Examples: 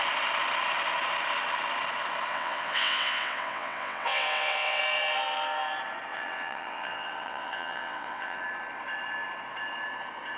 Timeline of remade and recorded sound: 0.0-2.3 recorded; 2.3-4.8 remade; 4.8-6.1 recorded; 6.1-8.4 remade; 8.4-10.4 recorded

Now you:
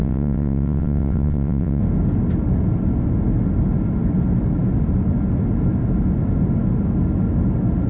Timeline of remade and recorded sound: 0.0-1.8 remade; 1.8-7.9 recorded

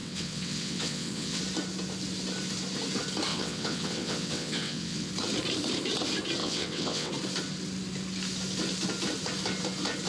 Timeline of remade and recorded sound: 0.0-1.4 remade; 1.4-3.3 recorded; 3.3-5.1 remade; 5.1-6.4 recorded; 6.4-7.1 remade; 7.1-10.1 recorded

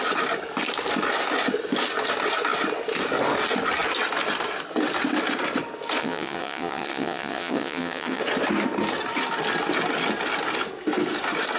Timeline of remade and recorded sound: 0.0-6.0 recorded; 6.0-8.2 remade; 8.2-11.6 recorded